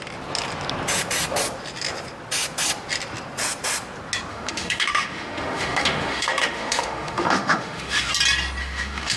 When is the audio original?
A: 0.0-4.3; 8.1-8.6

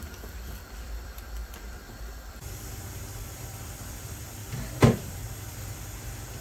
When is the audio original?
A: none

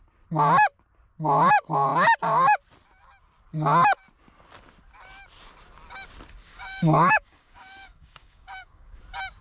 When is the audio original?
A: 0.0-6.5; 9.0-9.4

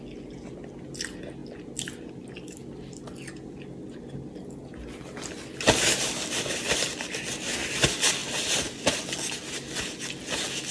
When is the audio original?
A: 0.0-8.2; 9.0-10.7

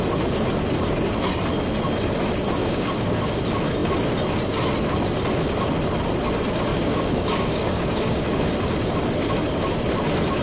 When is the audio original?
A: 0.0-2.6; 3.4-6.7; 8.5-10.4

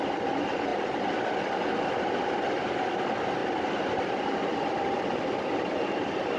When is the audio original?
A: 0.0-0.7; 1.3-3.4

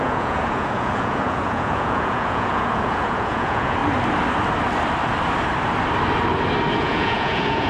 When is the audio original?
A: 3.8-6.8

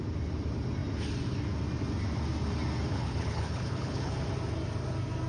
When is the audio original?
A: 0.0-2.9; 4.1-5.3